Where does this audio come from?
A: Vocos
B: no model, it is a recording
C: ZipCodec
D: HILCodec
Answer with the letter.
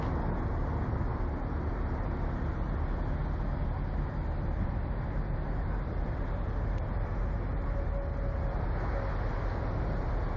B